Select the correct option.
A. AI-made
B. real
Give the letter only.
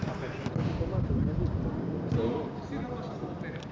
B